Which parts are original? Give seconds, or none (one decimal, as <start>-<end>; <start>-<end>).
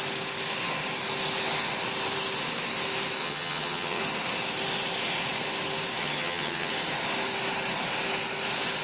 0.0-3.2; 4.0-6.0; 6.7-8.8